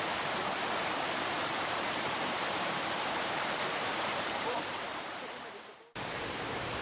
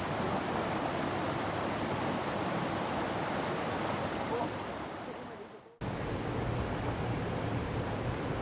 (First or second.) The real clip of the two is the second